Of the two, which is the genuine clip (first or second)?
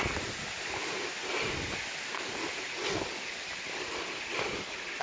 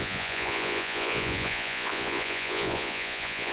first